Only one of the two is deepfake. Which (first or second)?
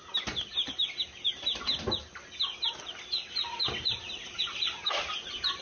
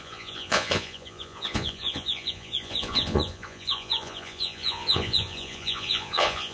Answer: second